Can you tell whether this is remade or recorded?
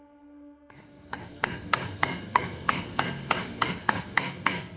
remade